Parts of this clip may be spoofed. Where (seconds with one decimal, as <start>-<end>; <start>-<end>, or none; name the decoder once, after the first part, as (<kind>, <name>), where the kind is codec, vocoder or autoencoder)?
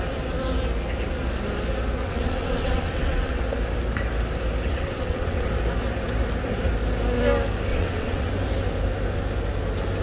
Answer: 2.0-3.4 (vocoder, WaveNeXt); 4.7-5.5; 7.7-8.3